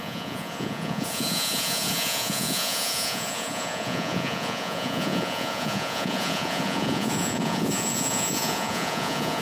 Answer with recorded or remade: remade